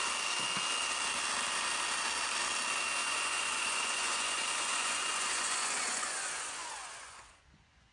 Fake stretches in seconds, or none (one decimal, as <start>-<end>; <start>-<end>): 3.0-7.9